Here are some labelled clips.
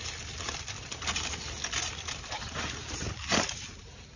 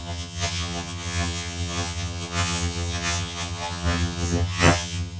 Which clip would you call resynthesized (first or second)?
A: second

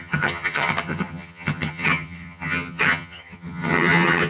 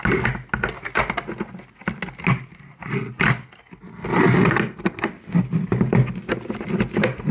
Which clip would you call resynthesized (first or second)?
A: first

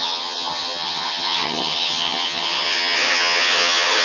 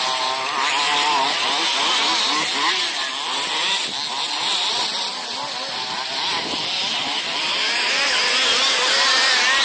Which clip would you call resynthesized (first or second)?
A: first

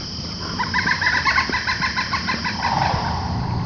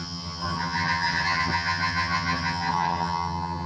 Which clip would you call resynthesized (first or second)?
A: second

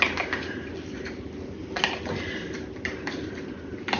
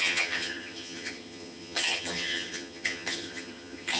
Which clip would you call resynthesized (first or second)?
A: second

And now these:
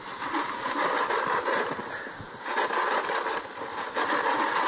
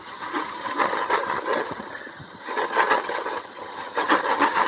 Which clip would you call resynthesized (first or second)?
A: second